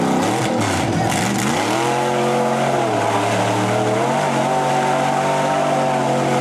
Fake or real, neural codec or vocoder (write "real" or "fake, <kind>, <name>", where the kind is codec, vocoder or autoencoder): real